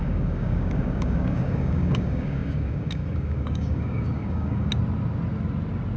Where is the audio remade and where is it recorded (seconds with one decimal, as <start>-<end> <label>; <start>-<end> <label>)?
0.0-4.7 remade; 4.7-6.0 recorded

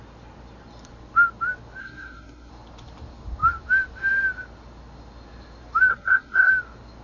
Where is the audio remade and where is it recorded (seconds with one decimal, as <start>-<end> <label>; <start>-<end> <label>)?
0.0-1.8 recorded; 1.8-2.5 remade; 2.5-5.9 recorded; 5.9-6.5 remade; 6.5-7.0 recorded

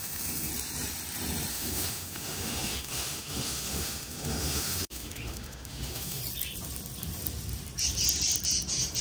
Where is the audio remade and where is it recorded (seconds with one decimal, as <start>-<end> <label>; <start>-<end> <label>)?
0.0-0.5 remade; 0.5-1.5 recorded; 1.5-6.2 remade; 6.2-9.0 recorded

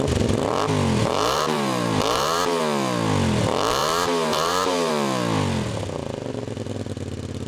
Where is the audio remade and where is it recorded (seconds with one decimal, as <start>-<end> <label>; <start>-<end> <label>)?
0.0-1.0 recorded; 1.0-2.6 remade; 2.6-3.8 recorded; 3.8-4.9 remade; 4.9-7.5 recorded

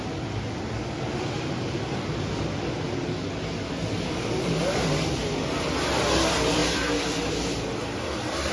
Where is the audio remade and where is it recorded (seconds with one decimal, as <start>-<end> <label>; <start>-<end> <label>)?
0.0-8.5 recorded